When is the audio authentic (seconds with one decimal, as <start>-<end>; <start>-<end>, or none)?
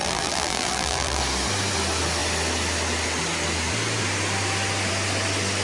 1.2-5.6